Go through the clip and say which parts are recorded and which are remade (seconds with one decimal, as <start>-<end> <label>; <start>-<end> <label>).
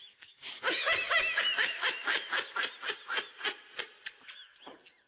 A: 0.0-2.3 remade; 2.3-5.1 recorded